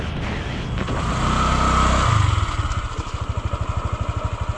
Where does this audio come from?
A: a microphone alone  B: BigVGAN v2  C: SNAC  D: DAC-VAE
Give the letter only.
A